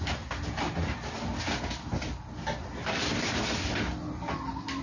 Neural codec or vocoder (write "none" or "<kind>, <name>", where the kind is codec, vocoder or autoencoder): none